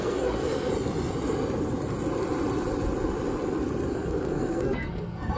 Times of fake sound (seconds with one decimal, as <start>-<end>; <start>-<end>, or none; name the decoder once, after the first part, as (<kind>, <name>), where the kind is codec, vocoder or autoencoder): 0.0-0.7 (codec, SNAC); 3.9-5.4